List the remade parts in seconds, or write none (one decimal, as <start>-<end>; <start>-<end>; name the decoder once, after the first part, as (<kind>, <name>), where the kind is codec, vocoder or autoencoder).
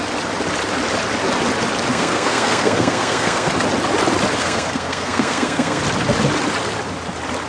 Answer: 1.9-3.5 (codec, SNAC); 4.4-5.8